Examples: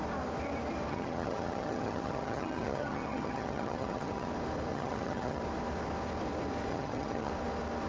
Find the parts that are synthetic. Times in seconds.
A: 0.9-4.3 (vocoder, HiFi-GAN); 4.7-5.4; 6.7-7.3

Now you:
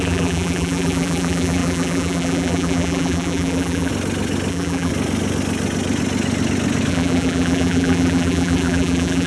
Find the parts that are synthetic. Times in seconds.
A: 0.0-3.9 (vocoder, BigVGAN v2); 4.5-4.9; 6.9-9.3

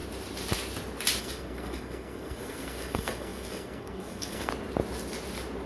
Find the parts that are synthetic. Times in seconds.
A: 1.2-4.5 (codec, SNAC)

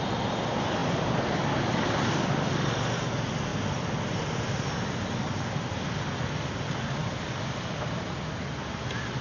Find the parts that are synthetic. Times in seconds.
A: 0.8-2.3 (vocoder, BigVGAN v2); 3.5-4.7

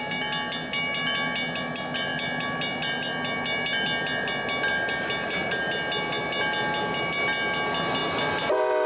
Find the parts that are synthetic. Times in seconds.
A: none

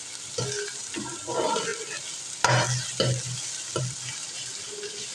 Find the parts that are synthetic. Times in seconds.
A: none